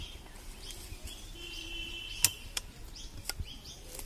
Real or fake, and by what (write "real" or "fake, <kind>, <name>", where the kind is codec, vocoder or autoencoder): real